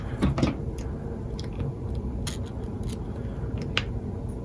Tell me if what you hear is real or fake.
real